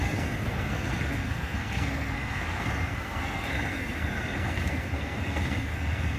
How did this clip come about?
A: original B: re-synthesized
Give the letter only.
B